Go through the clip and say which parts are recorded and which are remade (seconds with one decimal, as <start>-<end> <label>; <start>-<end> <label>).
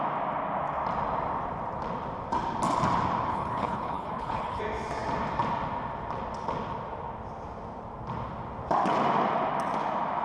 0.0-3.3 recorded; 3.3-4.6 remade; 4.6-10.2 recorded